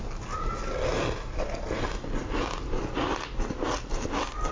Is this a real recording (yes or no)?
yes